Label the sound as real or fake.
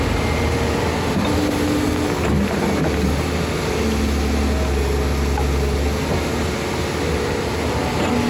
real